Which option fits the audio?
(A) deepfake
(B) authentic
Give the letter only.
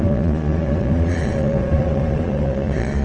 A